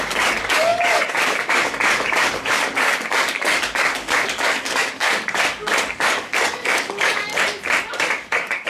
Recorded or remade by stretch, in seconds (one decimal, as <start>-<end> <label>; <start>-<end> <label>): 0.0-7.3 remade; 7.3-7.8 recorded; 7.8-8.7 remade